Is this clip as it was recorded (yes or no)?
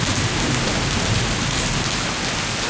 yes